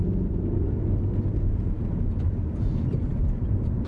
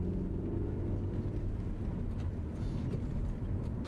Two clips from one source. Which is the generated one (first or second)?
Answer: first